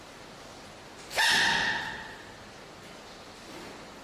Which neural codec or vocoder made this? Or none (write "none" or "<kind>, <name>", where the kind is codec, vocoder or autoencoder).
none